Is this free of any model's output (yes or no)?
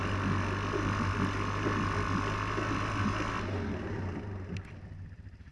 yes